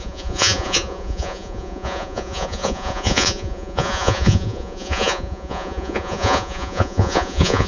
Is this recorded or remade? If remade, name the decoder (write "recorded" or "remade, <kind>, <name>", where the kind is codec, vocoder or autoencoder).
remade, vocoder, Vocos